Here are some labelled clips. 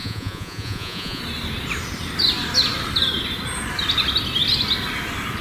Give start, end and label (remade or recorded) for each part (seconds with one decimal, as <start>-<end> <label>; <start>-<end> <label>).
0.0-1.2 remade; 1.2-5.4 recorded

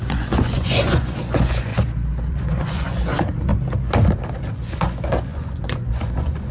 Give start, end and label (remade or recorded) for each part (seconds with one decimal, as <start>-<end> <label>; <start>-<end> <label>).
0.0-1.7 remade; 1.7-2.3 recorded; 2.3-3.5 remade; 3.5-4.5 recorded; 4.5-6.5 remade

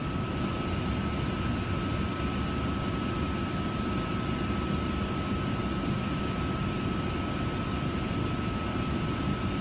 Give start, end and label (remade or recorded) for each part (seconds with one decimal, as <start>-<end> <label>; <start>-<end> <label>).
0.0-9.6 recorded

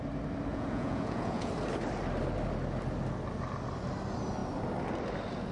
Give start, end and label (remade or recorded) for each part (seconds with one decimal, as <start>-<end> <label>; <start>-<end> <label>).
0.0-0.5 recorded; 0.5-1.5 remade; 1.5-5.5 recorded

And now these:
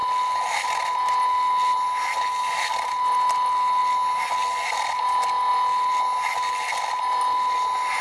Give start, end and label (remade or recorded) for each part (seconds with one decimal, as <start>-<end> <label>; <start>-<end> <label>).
0.0-8.0 recorded

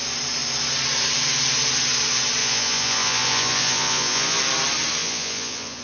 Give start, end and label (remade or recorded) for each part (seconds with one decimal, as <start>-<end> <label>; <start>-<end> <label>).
0.0-2.4 recorded; 2.4-4.4 remade; 4.4-5.0 recorded; 5.0-5.8 remade

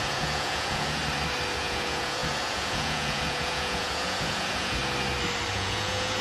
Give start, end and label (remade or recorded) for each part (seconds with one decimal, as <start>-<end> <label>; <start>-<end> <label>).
0.0-1.0 remade; 1.0-1.6 recorded; 1.6-4.8 remade; 4.8-5.5 recorded; 5.5-6.2 remade

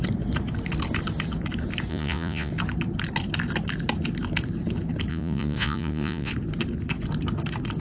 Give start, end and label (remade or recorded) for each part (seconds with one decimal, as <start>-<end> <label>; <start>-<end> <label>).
0.0-1.9 recorded; 1.9-2.5 remade; 2.5-5.1 recorded; 5.1-6.3 remade; 6.3-7.8 recorded